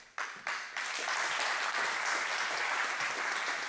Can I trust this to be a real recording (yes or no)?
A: yes